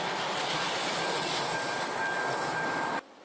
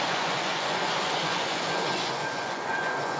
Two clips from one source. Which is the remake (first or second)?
second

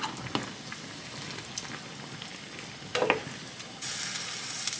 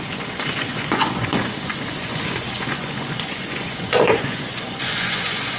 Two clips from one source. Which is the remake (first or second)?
second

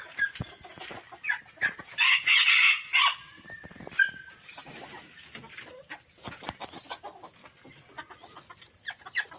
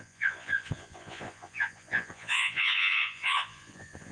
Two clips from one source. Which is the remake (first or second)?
second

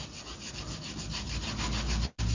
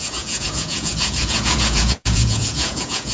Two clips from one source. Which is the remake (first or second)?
second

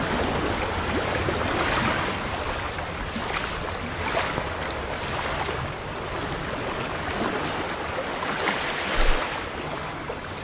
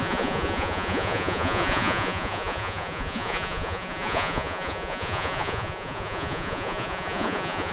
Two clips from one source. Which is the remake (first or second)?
second